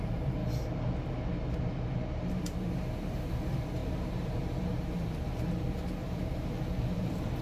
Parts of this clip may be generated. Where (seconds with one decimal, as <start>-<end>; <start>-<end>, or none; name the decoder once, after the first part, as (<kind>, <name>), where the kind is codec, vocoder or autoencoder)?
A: 0.0-0.4 (vocoder, BigVGAN v2); 2.3-7.4